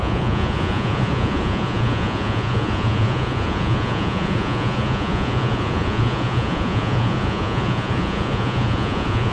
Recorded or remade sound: remade